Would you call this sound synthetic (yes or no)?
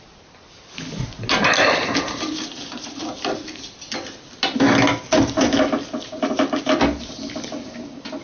no